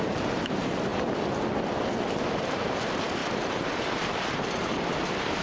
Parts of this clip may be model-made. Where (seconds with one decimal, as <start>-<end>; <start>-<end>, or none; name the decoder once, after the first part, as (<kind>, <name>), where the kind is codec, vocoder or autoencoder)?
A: 0.0-0.9 (vocoder, BigVGAN v2); 2.3-3.2; 4.3-5.4